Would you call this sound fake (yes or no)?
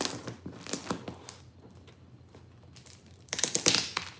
no